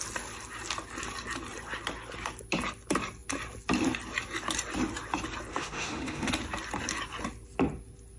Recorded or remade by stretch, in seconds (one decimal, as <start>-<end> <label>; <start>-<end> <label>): 0.0-5.5 recorded; 5.5-6.3 remade; 6.3-8.2 recorded